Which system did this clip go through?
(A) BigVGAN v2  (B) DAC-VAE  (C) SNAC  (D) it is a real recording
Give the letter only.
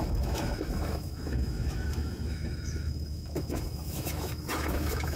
B